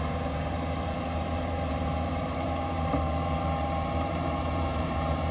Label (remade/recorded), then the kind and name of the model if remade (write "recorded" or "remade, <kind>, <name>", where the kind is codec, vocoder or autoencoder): remade, vocoder, BigVGAN v2